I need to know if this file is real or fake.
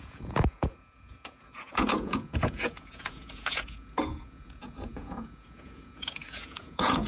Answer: fake